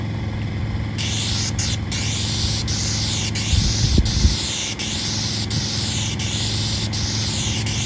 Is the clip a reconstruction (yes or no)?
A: no